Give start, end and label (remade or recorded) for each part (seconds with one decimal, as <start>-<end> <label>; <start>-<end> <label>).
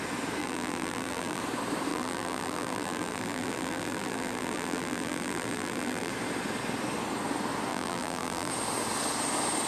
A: 0.0-0.4 recorded; 0.4-1.4 remade; 1.4-1.9 recorded; 1.9-6.1 remade; 6.1-7.7 recorded; 7.7-8.5 remade; 8.5-9.7 recorded